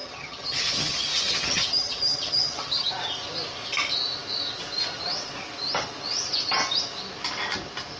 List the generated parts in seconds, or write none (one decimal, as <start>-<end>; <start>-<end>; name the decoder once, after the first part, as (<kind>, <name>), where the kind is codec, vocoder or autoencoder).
0.0-2.9 (vocoder, HiFi-GAN)